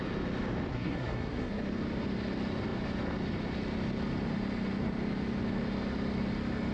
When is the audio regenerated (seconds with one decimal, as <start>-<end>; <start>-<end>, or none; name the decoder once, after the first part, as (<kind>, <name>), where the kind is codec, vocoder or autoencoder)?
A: 0.7-1.6 (codec, SNAC)